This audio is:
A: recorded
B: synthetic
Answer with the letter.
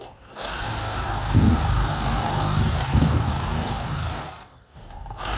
B